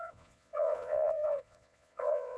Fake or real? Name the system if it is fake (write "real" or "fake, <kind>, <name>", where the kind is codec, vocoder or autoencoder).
fake, vocoder, Vocos